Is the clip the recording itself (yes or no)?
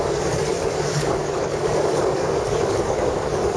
no